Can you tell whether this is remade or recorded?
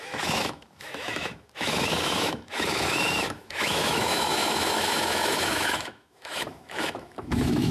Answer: remade